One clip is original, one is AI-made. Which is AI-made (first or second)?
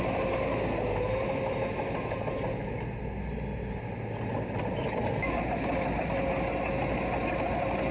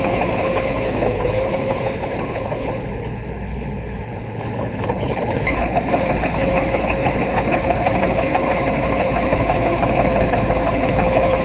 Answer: second